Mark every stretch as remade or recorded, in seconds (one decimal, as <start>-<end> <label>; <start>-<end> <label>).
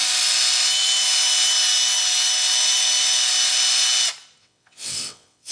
0.0-4.4 recorded; 4.4-5.5 remade